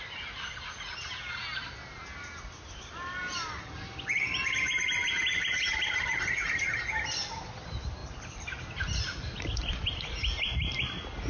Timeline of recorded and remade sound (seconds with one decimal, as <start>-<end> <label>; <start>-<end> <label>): 0.0-11.3 recorded